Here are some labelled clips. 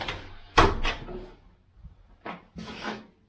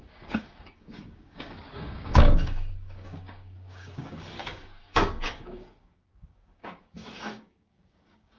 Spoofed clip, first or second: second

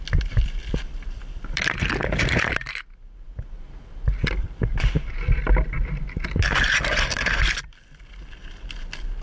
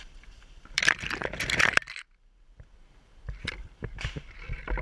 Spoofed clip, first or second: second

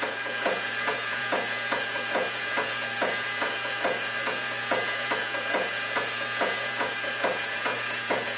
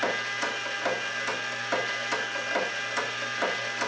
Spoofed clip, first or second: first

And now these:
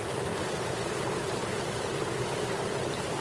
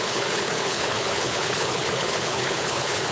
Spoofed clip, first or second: second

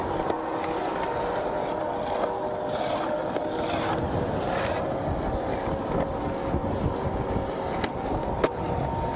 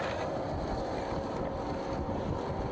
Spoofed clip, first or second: second